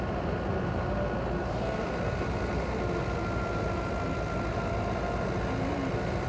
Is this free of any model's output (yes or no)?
yes